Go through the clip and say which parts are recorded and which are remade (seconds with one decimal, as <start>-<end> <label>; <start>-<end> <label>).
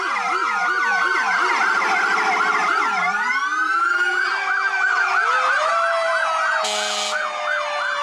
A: 0.0-2.6 recorded; 2.6-6.1 remade; 6.1-8.0 recorded